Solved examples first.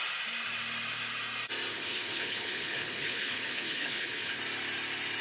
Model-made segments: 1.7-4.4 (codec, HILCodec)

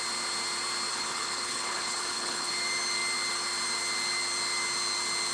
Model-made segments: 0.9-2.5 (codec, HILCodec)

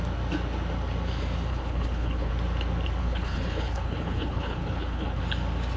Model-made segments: 1.5-2.3 (codec, HILCodec); 3.0-5.2

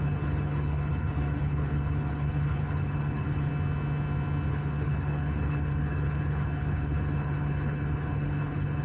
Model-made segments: 0.0-3.5 (codec, HILCodec); 4.5-8.8

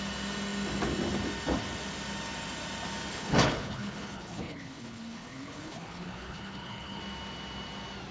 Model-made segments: 3.1-7.0 (codec, HILCodec)

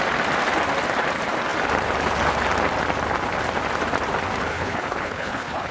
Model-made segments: 4.5-5.7 (codec, HILCodec)

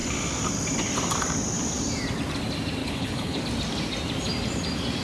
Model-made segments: 2.8-3.4 (codec, HILCodec)

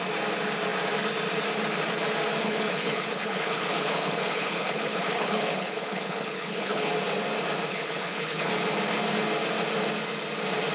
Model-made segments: 2.4-6.9 (codec, HILCodec); 7.7-8.5